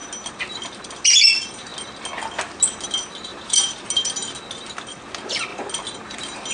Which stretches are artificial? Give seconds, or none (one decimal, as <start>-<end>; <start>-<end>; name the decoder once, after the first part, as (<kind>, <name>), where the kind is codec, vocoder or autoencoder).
3.3-3.9 (vocoder, BigVGAN v2)